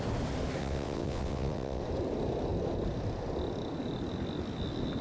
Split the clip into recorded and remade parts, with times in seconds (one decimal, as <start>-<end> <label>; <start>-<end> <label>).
0.0-0.6 recorded; 0.6-1.8 remade; 1.8-5.0 recorded